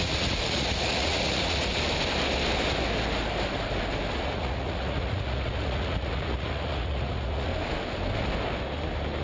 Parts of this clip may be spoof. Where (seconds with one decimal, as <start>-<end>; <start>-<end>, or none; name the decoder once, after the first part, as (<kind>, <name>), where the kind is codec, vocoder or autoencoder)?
0.0-1.7 (vocoder, Vocos); 4.1-7.5